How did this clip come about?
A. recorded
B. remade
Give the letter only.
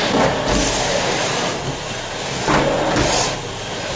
A